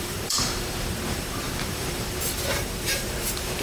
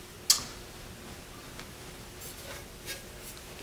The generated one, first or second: first